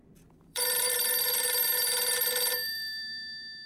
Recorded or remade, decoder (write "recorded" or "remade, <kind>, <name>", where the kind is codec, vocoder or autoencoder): remade, vocoder, BigVGAN v2